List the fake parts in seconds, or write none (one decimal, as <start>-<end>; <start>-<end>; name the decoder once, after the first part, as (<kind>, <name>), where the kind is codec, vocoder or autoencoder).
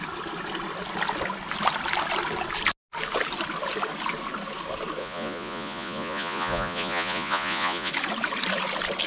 5.0-7.9 (vocoder, Vocos)